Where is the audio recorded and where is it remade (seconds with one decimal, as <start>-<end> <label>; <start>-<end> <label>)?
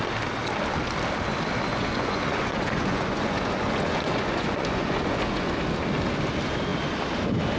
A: 0.0-1.7 recorded; 1.7-5.6 remade; 5.6-7.6 recorded